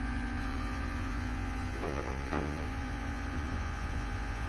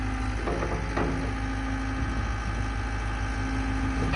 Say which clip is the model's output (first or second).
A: first